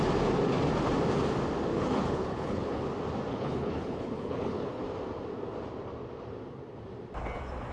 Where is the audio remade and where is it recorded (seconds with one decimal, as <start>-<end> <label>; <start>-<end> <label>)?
0.0-1.7 recorded; 1.7-2.8 remade; 2.8-3.3 recorded; 3.3-4.8 remade; 4.8-7.7 recorded